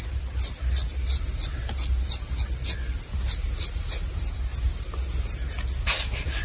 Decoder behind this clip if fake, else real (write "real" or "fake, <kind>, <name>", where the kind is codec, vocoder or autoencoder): real